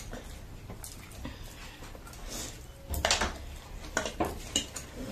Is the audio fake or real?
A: real